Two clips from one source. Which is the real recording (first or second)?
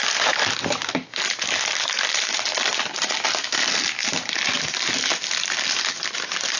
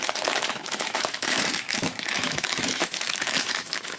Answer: first